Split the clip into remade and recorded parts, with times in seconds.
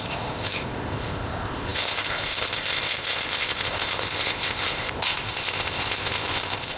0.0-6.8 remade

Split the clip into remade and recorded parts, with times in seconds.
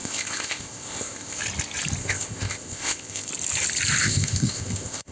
0.0-1.4 remade; 1.4-2.0 recorded; 2.0-3.3 remade; 3.3-4.0 recorded; 4.0-5.1 remade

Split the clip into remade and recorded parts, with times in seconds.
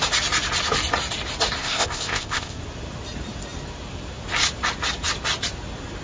0.0-1.6 recorded; 1.6-2.6 remade; 2.6-6.0 recorded